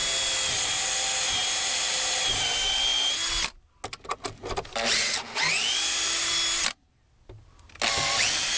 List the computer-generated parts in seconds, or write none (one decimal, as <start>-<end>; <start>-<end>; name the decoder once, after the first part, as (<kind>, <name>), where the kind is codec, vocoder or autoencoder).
none